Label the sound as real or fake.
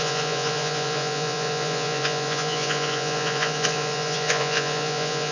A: fake